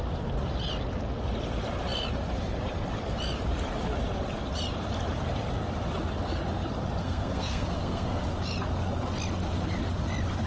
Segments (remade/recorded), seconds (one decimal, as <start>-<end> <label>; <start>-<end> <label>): 0.0-7.0 recorded; 7.0-8.2 remade; 8.2-10.5 recorded